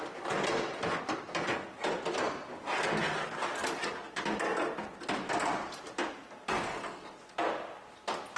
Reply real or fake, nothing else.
real